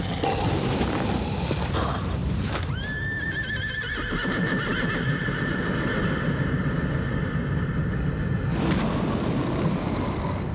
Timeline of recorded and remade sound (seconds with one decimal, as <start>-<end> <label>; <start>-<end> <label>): 0.0-2.2 recorded; 2.2-5.8 remade; 5.8-10.5 recorded